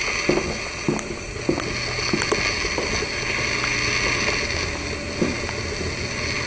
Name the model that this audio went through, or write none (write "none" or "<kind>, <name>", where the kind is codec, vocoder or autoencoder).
none